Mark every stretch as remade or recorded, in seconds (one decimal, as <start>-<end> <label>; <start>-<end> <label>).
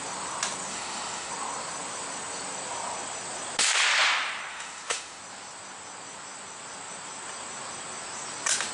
0.0-0.7 recorded; 0.7-1.3 remade; 1.3-4.5 recorded; 4.5-5.2 remade; 5.2-8.7 recorded